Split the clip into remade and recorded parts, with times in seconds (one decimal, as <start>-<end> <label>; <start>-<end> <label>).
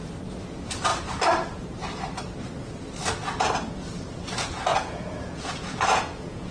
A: 0.0-4.7 recorded; 4.7-6.5 remade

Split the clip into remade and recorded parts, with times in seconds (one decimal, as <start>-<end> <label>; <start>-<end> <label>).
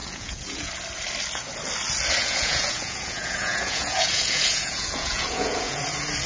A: 0.0-0.7 remade; 0.7-2.2 recorded; 2.2-5.8 remade; 5.8-6.3 recorded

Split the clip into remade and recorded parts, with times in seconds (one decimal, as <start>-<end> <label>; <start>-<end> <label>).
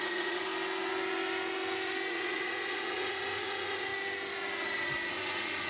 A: 0.0-0.5 remade; 0.5-2.1 recorded; 2.1-3.9 remade; 3.9-5.1 recorded; 5.1-5.7 remade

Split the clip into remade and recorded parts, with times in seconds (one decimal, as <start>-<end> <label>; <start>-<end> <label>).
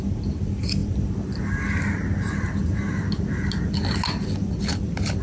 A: 0.0-5.2 recorded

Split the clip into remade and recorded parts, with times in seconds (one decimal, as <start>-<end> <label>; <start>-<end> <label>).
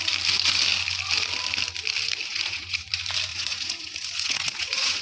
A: 0.0-2.3 recorded; 2.3-2.9 remade; 2.9-3.3 recorded; 3.3-5.0 remade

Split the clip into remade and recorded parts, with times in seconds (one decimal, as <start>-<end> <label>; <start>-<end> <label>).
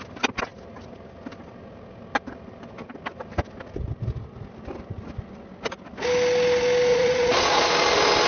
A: 0.0-6.9 recorded; 6.9-7.7 remade; 7.7-8.3 recorded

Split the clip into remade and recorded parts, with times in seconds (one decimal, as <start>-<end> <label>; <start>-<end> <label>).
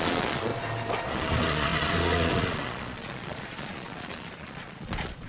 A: 0.0-0.5 remade; 0.5-1.1 recorded; 1.1-5.3 remade